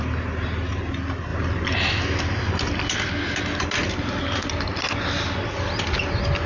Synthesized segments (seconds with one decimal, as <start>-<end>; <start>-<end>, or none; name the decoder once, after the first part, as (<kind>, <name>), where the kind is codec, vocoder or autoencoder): none